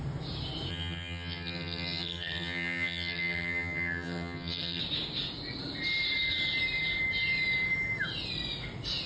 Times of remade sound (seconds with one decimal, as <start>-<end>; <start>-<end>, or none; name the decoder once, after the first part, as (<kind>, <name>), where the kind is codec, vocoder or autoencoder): 0.7-4.8 (vocoder, HiFi-GAN)